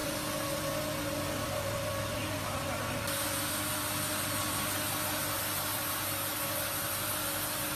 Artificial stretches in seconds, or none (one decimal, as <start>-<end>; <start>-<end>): none